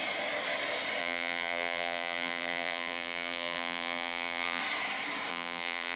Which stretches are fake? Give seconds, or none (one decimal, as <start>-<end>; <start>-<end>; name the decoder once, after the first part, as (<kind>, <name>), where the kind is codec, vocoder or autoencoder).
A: 1.0-4.6 (vocoder, BigVGAN v2); 5.3-6.0